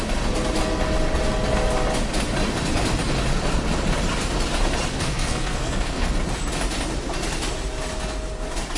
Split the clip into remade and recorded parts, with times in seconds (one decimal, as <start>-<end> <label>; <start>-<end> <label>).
0.0-4.9 recorded; 4.9-6.2 remade; 6.2-8.8 recorded